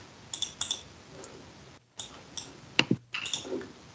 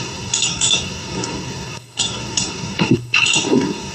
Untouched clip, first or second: first